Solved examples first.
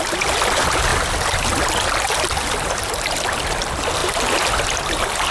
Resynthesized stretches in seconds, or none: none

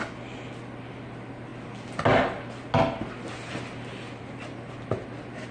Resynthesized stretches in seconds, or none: none

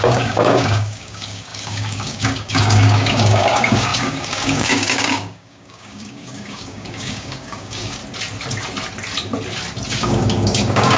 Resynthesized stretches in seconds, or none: 0.0-8.0 (codec, DAC); 9.9-11.0

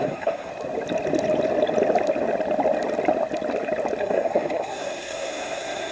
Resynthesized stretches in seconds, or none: 0.0-0.5 (codec, SNAC); 4.0-5.9